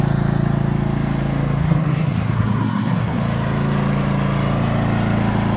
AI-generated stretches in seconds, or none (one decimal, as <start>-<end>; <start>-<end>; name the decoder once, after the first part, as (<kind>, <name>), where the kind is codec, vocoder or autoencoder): 1.6-3.2 (codec, SNAC)